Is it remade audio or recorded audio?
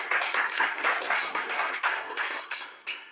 remade